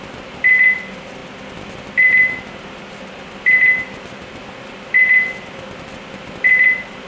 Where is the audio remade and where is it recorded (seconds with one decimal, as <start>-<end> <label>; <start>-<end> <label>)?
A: 0.0-7.1 recorded